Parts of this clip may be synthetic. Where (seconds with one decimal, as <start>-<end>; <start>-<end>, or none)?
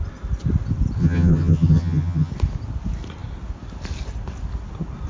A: 1.0-2.3